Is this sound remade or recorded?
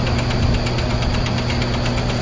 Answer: recorded